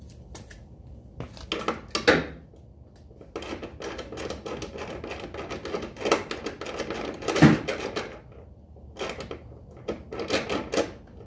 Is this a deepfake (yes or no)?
no